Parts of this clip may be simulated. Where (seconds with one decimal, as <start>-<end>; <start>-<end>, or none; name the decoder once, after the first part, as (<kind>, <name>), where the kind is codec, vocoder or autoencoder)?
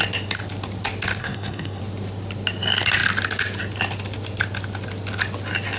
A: 1.2-1.8 (codec, SNAC)